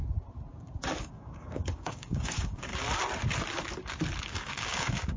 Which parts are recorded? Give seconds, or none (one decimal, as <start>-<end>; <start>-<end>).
0.0-1.0; 2.7-4.2